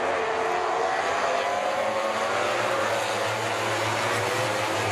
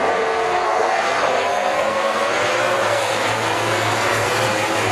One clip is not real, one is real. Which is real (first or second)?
first